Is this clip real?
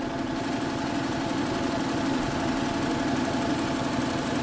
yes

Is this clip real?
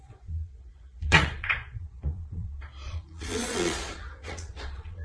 no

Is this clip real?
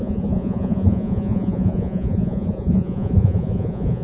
no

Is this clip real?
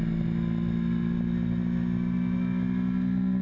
yes